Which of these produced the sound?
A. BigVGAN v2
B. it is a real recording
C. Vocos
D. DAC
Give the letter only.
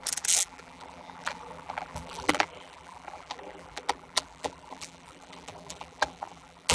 A